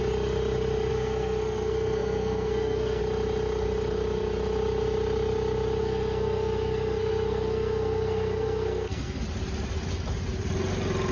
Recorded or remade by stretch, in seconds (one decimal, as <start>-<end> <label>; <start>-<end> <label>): 0.0-0.9 recorded; 0.9-3.0 remade; 3.0-5.8 recorded; 5.8-9.2 remade; 9.2-11.1 recorded